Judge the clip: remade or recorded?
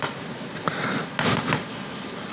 recorded